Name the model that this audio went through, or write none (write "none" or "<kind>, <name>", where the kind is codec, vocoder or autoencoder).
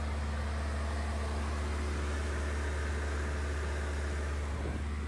none